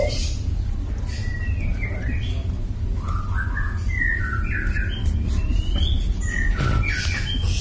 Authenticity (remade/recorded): recorded